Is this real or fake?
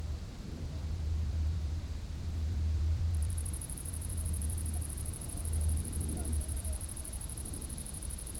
fake